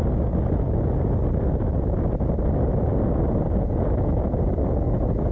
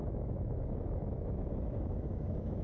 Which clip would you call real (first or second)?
first